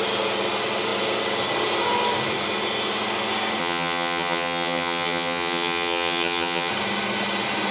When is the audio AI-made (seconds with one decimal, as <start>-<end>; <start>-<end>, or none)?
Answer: 3.6-6.7